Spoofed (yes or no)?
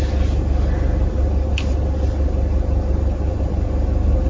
no